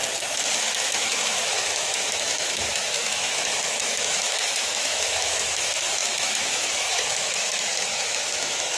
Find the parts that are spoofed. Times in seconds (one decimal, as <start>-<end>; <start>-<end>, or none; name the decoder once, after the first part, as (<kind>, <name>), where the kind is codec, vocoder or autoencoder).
0.6-8.8 (autoencoder, DAC-VAE)